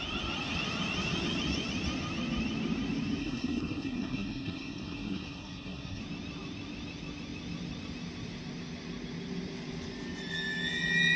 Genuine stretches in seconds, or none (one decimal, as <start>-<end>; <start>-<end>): 0.0-3.2; 6.0-11.2